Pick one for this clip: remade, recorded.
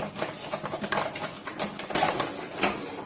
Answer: recorded